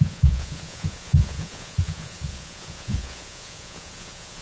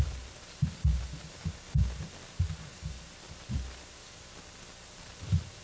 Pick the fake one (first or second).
first